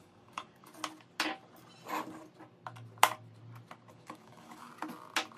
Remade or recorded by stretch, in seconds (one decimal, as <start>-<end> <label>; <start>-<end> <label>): 0.0-0.7 remade; 0.7-3.9 recorded; 3.9-4.7 remade; 4.7-5.4 recorded

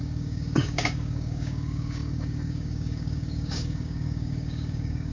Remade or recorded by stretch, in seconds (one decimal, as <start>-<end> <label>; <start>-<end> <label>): 0.0-5.1 remade